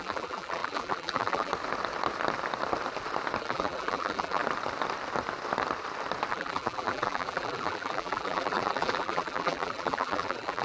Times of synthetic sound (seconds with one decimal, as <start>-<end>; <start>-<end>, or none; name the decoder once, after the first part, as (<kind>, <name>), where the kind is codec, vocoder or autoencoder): 0.0-1.5 (vocoder, BigVGAN v2); 3.4-4.4; 6.3-10.6